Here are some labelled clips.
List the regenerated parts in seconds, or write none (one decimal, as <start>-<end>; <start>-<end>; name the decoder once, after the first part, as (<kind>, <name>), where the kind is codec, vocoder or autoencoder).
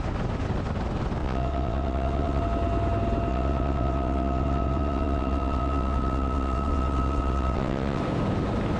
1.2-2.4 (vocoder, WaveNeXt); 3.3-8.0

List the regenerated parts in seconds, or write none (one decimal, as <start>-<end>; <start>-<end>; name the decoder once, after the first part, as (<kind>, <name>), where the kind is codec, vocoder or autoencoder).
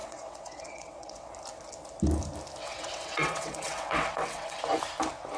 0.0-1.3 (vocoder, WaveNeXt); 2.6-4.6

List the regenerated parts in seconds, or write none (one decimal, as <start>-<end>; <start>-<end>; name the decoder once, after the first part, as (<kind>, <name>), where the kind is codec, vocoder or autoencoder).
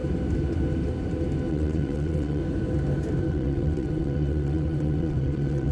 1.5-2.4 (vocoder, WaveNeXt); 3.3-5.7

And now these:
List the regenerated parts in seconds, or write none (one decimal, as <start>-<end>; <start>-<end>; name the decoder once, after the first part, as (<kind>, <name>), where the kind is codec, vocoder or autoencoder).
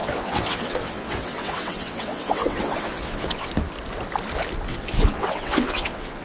0.0-3.5 (vocoder, WaveNeXt); 4.7-6.2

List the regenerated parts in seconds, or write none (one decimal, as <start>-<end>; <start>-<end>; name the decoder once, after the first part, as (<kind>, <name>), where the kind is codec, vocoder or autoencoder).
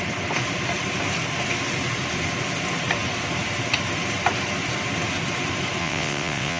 5.8-6.6 (vocoder, WaveNeXt)